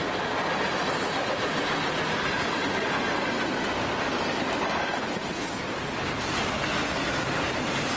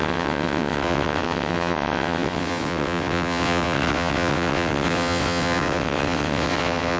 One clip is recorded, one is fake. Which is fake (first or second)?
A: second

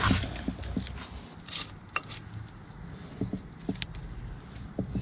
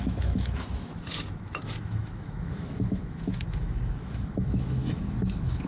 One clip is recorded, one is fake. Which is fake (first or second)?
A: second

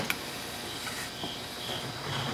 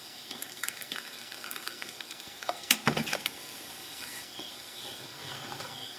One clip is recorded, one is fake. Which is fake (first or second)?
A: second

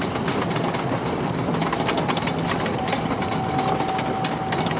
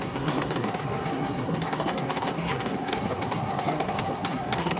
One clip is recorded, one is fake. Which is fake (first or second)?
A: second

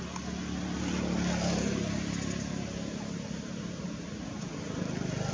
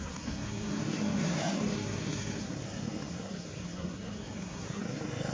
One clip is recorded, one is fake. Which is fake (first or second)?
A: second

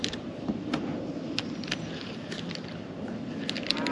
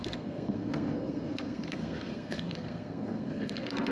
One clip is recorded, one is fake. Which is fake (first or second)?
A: second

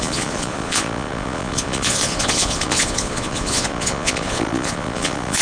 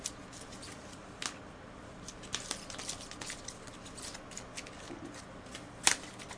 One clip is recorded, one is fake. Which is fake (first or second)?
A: first